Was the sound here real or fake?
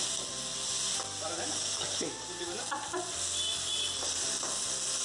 real